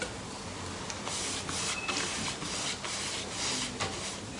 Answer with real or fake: real